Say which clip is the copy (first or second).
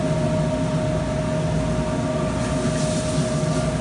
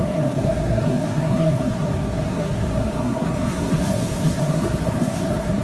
second